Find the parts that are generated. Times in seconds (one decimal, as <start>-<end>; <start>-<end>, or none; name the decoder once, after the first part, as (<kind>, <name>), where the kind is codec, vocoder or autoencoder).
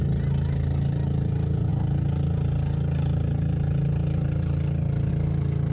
none